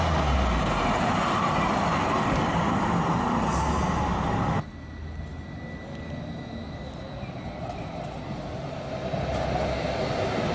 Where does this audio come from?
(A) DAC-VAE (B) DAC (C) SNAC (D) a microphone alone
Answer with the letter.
D